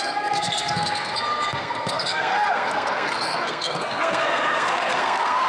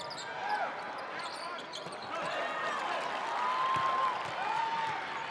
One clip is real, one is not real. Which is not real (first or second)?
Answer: first